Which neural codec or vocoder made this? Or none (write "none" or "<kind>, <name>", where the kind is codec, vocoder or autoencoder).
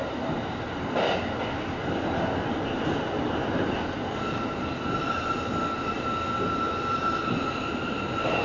vocoder, BigVGAN v2